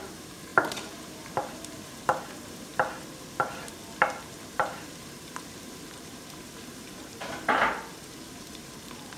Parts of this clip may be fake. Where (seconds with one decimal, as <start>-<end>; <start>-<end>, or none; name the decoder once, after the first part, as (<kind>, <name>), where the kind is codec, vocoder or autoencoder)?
0.0-2.7 (vocoder, BigVGAN v2); 4.5-7.0; 8.0-9.2